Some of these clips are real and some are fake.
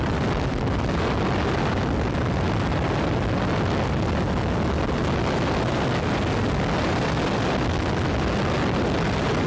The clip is real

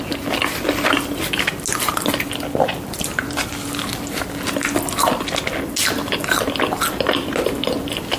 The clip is real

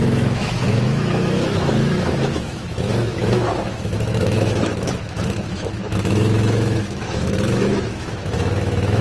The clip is fake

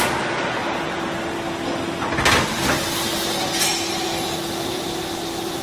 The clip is real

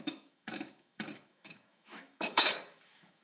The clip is fake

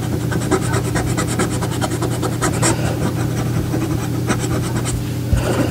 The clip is real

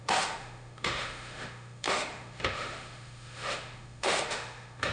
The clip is fake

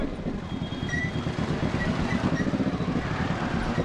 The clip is real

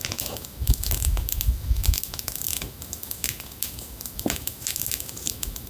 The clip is fake